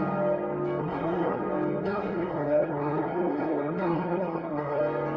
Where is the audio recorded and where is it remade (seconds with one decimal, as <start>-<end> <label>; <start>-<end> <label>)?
0.0-0.8 recorded; 0.8-1.4 remade; 1.4-1.8 recorded; 1.8-4.8 remade; 4.8-5.2 recorded